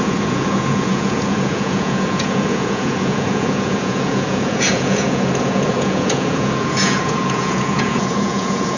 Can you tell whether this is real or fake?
fake